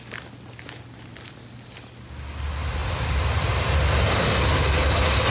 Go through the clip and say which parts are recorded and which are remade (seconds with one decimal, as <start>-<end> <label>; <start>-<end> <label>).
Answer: 0.0-5.3 recorded